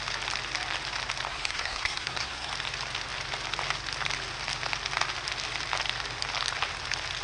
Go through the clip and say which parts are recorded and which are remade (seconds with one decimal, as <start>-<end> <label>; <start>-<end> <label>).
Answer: 0.0-1.3 recorded; 1.3-2.5 remade; 2.5-7.2 recorded